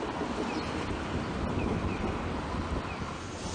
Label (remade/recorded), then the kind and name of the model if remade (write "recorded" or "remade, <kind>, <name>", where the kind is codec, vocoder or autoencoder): recorded